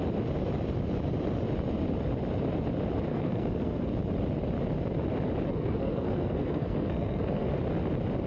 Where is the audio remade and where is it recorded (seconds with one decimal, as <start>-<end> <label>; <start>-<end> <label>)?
0.0-3.1 recorded; 3.1-3.9 remade; 3.9-5.5 recorded; 5.5-7.5 remade; 7.5-8.3 recorded